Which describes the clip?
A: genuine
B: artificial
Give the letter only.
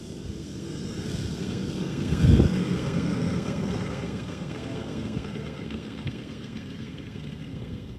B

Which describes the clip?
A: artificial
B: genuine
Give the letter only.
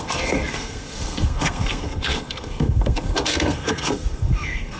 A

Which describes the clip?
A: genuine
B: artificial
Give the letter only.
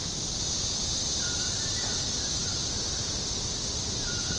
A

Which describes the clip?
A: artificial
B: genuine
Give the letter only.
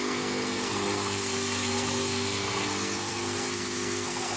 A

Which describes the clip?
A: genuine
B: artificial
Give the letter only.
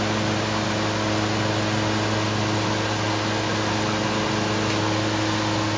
A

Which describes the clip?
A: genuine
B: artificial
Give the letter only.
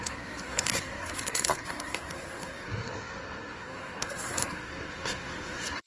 B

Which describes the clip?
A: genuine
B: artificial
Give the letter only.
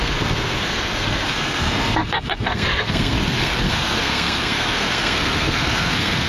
B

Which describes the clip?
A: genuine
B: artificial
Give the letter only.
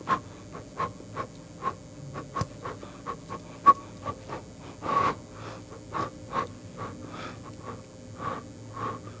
A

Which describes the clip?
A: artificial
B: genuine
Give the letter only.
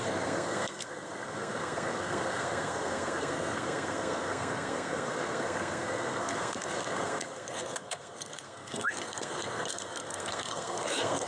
A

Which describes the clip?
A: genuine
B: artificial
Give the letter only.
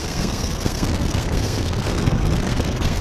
B